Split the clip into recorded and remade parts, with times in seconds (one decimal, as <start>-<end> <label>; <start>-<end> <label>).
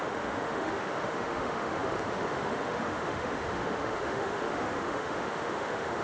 0.0-6.0 remade